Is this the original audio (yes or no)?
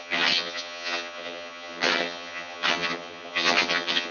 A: no